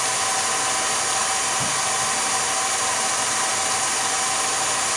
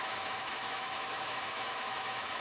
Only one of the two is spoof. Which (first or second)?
second